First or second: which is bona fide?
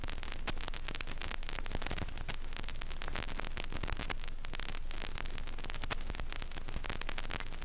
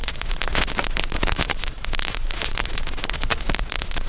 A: first